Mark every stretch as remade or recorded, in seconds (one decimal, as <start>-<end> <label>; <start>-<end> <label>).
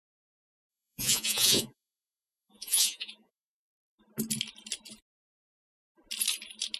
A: 0.0-0.7 recorded; 0.7-4.0 remade; 4.0-6.8 recorded